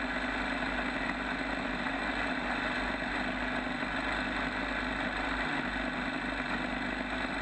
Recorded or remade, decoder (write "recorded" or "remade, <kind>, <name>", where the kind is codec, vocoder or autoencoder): recorded